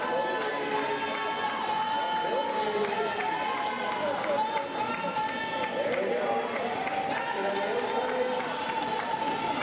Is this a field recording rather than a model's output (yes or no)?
yes